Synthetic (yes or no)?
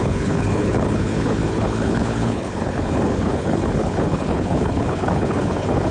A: yes